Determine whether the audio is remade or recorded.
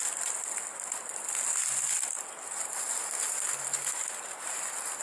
recorded